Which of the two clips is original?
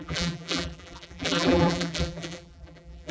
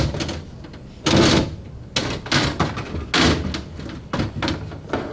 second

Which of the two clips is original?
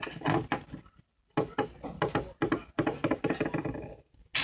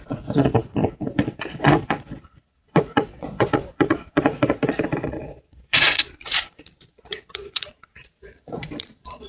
first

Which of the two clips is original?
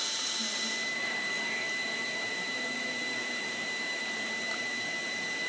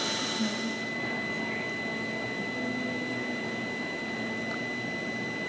second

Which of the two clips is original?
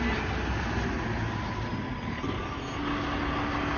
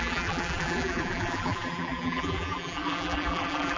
first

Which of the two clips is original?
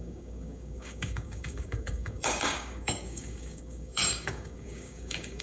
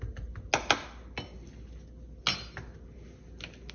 second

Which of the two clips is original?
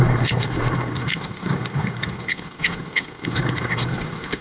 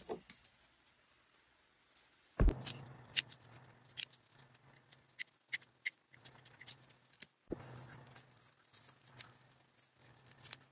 second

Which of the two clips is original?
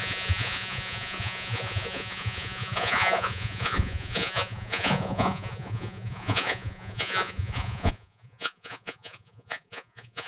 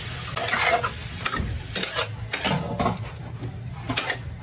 second